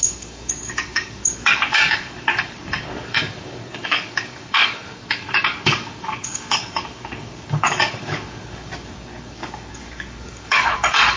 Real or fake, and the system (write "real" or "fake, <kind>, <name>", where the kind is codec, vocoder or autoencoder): fake, codec, DAC